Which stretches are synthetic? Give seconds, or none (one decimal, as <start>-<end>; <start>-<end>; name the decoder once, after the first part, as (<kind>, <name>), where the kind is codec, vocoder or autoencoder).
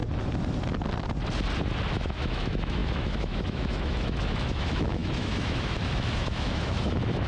1.9-7.3 (autoencoder, DAC-VAE)